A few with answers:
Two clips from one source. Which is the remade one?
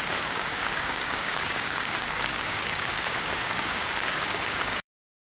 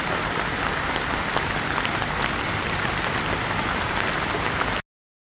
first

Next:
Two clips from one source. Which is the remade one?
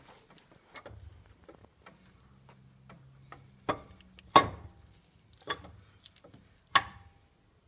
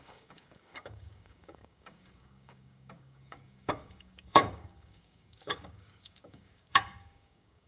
second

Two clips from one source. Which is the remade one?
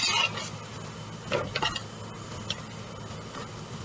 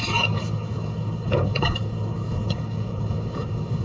second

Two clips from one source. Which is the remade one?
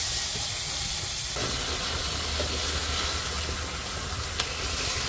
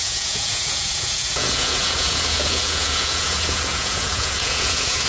second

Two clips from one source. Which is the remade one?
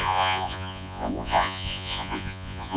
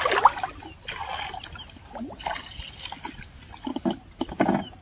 first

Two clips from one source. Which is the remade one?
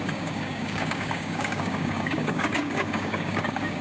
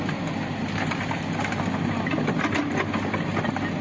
first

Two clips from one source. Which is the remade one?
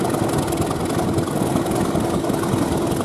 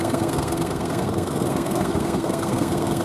second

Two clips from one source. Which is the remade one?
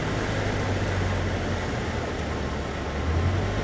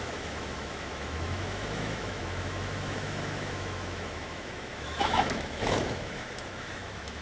second